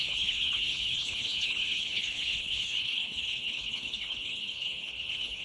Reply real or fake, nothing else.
fake